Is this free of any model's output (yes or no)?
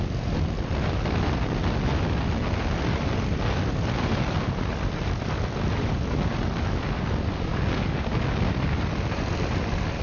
yes